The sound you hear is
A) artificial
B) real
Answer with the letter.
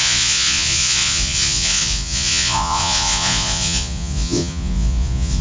A